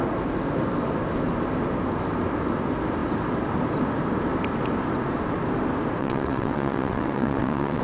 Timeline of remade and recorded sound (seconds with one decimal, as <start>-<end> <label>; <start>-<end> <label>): 0.0-6.0 recorded; 6.0-7.8 remade